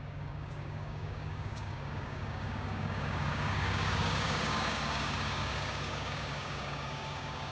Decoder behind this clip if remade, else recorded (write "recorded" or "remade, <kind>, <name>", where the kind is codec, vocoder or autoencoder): remade, codec, DAC